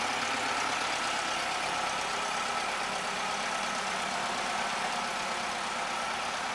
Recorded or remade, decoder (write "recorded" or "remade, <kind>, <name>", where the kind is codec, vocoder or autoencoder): recorded